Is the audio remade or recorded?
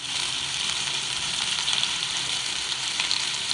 remade